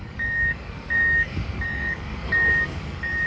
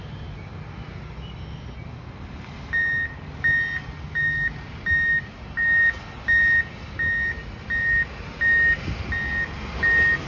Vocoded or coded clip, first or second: first